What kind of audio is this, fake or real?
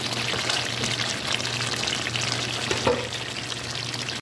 real